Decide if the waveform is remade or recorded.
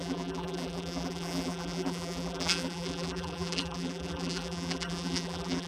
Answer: remade